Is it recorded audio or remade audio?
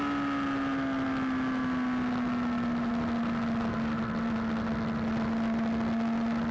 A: recorded